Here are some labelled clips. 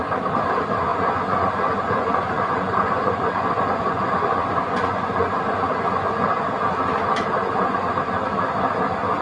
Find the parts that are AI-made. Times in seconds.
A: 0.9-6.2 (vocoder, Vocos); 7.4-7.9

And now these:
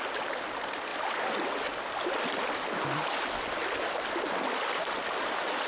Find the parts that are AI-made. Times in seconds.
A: none

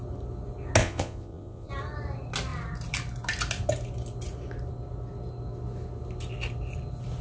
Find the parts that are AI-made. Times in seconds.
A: 0.8-1.7 (vocoder, Vocos)

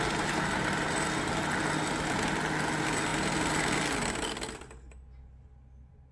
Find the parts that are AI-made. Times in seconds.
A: none

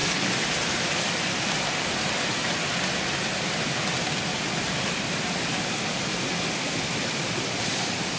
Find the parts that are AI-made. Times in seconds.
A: none